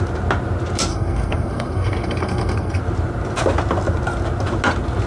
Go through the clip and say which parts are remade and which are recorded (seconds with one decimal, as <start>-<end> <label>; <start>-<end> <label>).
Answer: 0.0-0.9 recorded; 0.9-2.8 remade; 2.8-5.1 recorded